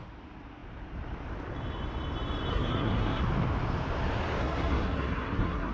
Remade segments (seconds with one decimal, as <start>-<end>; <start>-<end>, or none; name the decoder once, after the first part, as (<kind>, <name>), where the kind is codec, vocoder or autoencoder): 2.5-3.2 (codec, SNAC); 4.4-5.7